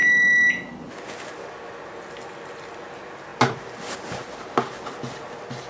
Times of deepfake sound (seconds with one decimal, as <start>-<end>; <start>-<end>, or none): none